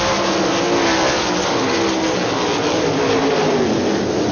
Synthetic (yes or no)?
no